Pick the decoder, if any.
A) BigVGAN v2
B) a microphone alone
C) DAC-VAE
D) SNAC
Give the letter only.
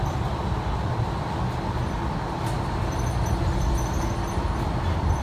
B